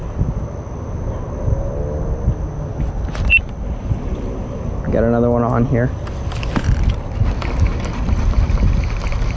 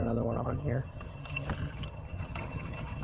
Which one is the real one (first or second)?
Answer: first